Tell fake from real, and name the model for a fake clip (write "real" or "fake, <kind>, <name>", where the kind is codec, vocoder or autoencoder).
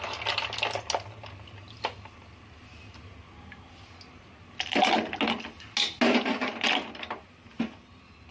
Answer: real